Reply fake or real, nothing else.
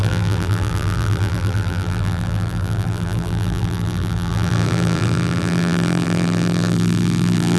fake